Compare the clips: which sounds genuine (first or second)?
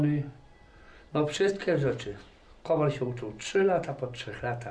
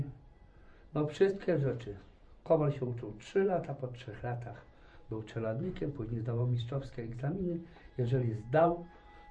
first